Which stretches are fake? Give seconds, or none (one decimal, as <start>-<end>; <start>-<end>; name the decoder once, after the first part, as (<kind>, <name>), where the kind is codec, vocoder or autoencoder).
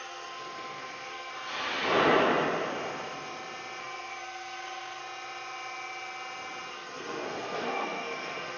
0.0-1.3 (codec, SNAC); 3.8-5.0; 6.7-8.6